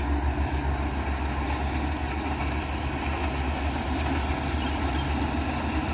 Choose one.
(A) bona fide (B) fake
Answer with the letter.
A